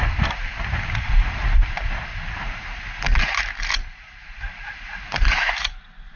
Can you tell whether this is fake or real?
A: real